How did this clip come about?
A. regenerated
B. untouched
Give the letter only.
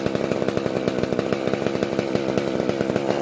B